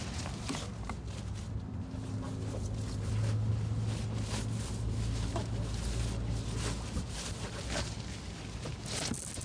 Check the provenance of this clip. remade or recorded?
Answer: recorded